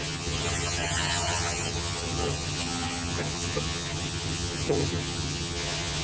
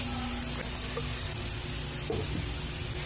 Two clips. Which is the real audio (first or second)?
second